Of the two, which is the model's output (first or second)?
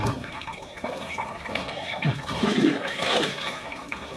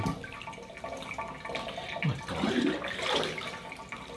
first